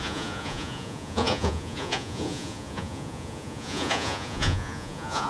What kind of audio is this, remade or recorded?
remade